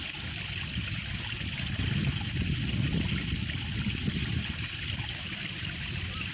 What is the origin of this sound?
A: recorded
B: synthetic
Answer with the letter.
A